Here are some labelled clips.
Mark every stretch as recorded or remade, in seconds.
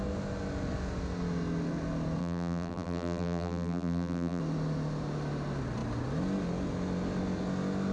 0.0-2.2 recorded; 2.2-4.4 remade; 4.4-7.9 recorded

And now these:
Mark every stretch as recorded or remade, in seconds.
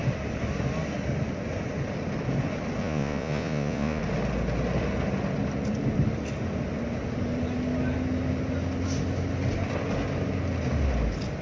0.0-2.8 recorded; 2.8-4.0 remade; 4.0-11.4 recorded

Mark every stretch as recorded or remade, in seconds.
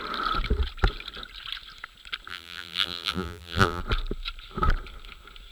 0.0-2.3 recorded; 2.3-3.8 remade; 3.8-5.5 recorded